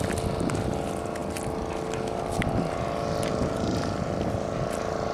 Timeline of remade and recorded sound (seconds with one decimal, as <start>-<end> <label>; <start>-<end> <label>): 0.0-5.1 recorded